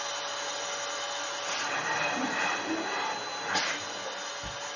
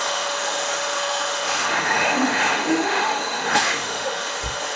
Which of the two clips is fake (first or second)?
second